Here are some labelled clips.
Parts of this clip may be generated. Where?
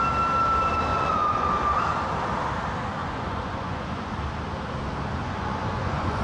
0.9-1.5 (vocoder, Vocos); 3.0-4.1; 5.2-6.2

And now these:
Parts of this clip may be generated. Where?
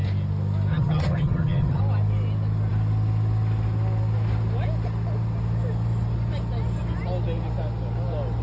0.7-1.8 (vocoder, HiFi-GAN)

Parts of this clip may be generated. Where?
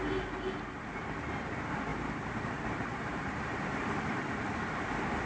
1.9-5.3 (vocoder, BigVGAN v2)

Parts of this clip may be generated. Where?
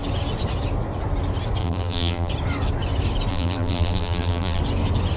1.6-2.3 (vocoder, BigVGAN v2); 3.3-4.6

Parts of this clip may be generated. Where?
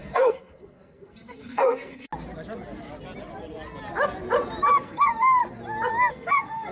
0.0-2.1 (codec, SNAC); 4.7-5.4; 6.1-6.7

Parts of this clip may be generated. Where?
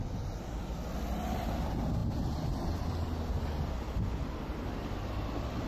none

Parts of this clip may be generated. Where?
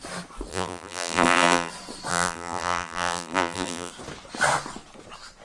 0.5-1.7 (vocoder, BigVGAN v2); 2.1-3.9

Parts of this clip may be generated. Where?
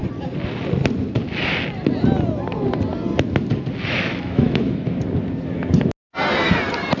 3.8-5.0 (autoencoder, DAC-VAE)